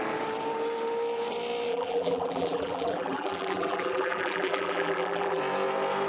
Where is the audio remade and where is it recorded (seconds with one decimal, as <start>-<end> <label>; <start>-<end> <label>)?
0.0-1.7 recorded; 1.7-5.4 remade; 5.4-6.1 recorded